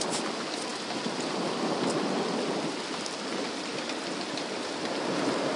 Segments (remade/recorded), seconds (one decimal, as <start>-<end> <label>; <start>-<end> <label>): 0.0-5.6 recorded